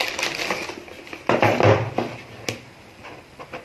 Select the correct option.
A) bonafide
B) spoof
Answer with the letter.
A